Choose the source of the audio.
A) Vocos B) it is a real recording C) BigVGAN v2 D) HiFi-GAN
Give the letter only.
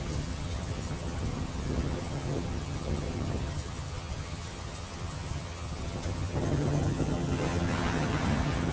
D